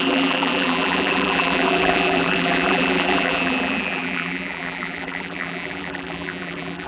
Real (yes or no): no